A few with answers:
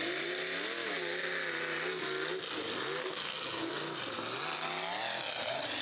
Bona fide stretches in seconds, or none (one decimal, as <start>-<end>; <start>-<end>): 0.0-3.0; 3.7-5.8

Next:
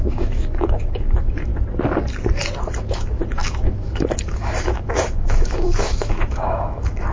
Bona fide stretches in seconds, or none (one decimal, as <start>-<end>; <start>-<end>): 1.5-2.9

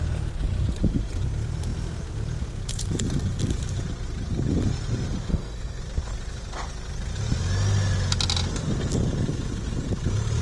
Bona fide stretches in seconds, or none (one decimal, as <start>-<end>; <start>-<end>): 0.0-5.3; 5.8-10.4